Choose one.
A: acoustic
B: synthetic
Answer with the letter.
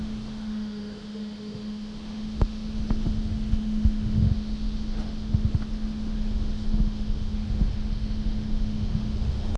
B